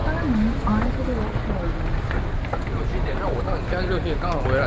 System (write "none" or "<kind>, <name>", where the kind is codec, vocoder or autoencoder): none